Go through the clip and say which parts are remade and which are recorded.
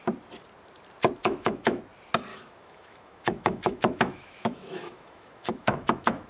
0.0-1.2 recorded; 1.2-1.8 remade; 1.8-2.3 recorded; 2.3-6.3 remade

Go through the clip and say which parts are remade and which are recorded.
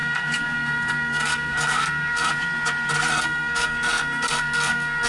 0.0-2.3 remade; 2.3-3.1 recorded; 3.1-5.1 remade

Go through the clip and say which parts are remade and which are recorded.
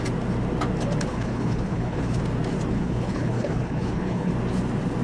0.0-1.1 recorded; 1.1-2.2 remade; 2.2-2.7 recorded; 2.7-4.3 remade; 4.3-5.0 recorded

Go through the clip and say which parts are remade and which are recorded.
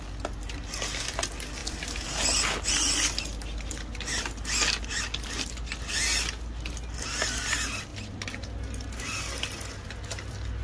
0.0-10.6 recorded